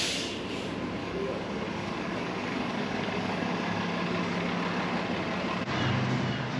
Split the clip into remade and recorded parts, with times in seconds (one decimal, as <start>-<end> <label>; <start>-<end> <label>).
0.0-1.0 recorded; 1.0-4.6 remade; 4.6-6.6 recorded